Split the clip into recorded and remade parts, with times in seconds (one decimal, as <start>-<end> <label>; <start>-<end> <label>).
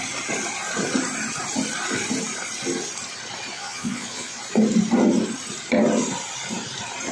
0.0-3.5 recorded; 3.5-4.4 remade; 4.4-7.1 recorded